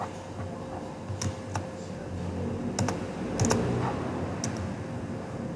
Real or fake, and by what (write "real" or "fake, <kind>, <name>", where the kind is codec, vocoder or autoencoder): real